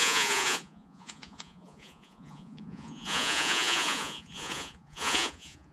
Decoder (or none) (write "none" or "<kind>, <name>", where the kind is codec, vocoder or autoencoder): vocoder, Vocos